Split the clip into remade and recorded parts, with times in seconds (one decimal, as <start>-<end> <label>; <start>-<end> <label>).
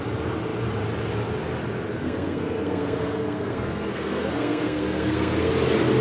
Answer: 0.0-1.9 recorded; 1.9-5.5 remade; 5.5-6.0 recorded